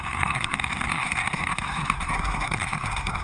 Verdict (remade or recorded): remade